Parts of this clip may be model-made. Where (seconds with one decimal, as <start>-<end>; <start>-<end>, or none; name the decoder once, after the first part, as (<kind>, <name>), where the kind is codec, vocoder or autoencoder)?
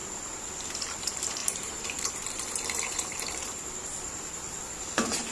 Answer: 0.0-0.8 (vocoder, BigVGAN v2); 1.4-4.6